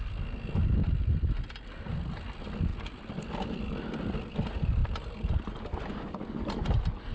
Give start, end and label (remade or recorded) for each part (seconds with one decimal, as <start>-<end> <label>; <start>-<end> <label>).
0.0-7.1 recorded